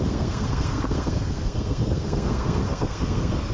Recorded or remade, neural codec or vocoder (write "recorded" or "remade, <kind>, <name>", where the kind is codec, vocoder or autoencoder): remade, codec, SNAC